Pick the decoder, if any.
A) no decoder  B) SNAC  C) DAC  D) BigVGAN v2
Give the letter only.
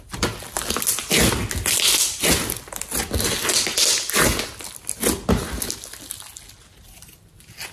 A